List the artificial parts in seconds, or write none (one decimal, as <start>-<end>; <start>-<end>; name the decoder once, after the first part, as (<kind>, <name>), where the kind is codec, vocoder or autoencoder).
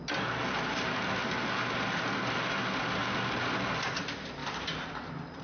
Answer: none